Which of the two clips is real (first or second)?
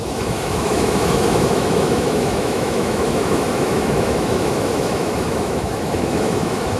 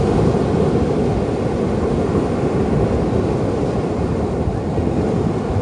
second